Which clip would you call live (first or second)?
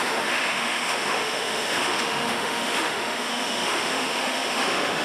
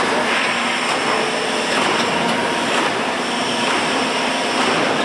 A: second